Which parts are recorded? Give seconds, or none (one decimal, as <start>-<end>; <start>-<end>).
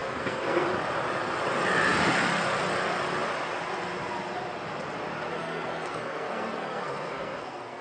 0.7-5.3